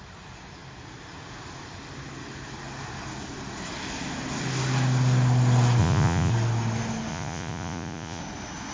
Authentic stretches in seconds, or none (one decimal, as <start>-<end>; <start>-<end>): 0.0-5.8; 6.3-7.1; 8.2-8.7

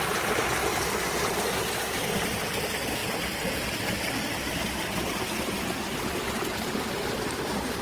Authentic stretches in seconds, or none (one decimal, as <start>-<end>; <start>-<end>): 0.0-7.8

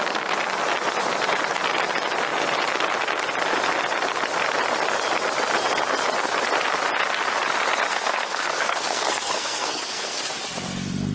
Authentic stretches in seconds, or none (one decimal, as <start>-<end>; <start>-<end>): 0.0-7.9; 10.2-11.1

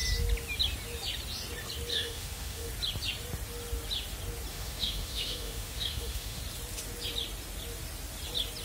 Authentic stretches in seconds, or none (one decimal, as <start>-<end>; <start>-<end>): 0.0-1.9; 2.7-4.5; 6.4-8.6